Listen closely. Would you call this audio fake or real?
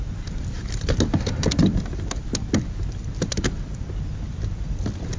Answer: real